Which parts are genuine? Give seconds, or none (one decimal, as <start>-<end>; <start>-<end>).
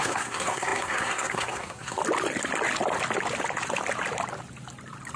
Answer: 2.0-5.2